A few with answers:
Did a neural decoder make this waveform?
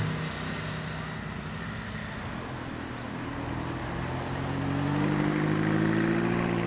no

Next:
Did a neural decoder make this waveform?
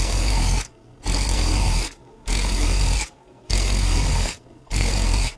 yes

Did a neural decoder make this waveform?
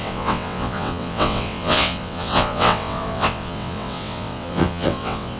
yes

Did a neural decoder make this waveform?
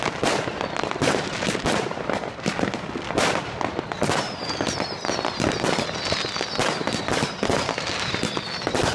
no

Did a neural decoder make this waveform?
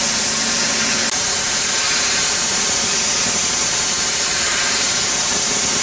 no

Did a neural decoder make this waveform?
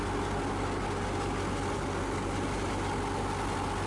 no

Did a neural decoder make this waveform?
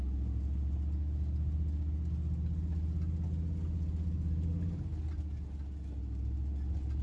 no